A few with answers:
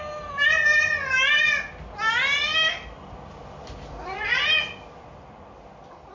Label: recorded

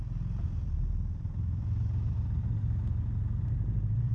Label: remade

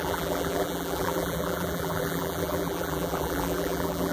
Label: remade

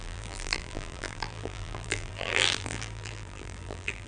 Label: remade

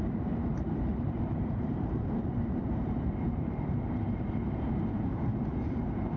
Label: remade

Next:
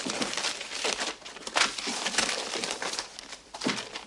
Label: remade